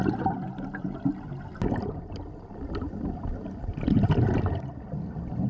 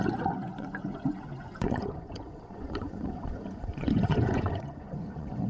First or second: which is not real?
second